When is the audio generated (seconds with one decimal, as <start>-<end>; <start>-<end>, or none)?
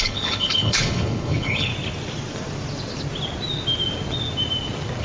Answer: 0.0-1.7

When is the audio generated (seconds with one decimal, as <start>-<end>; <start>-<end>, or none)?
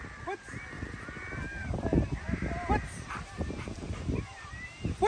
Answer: 1.6-5.1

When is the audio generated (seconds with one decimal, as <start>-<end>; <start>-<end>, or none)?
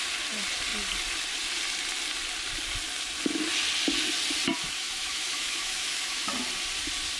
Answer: 4.6-6.3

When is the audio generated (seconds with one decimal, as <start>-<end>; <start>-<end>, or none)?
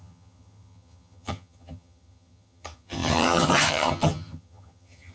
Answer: 0.0-5.1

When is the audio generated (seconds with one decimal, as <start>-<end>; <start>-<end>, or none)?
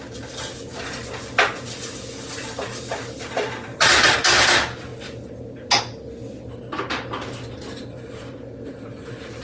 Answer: none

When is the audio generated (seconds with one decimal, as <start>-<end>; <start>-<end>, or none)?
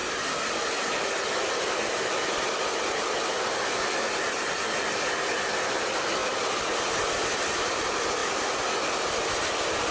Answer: none